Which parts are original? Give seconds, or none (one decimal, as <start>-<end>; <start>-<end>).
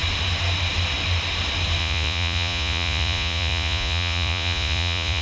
0.0-1.8